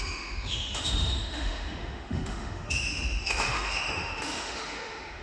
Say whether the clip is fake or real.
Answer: fake